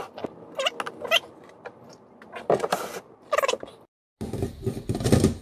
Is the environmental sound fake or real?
real